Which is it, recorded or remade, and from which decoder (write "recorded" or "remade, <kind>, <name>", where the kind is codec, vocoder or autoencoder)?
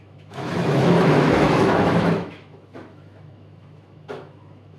remade, autoencoder, DAC-VAE